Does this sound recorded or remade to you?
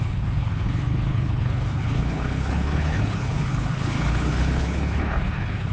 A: remade